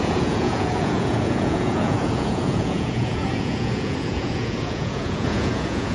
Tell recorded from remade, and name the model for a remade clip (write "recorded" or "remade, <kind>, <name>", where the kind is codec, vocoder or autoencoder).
remade, vocoder, Vocos